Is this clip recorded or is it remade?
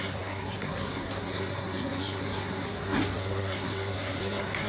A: remade